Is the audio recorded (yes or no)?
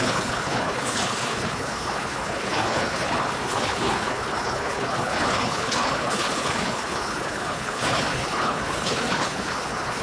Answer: no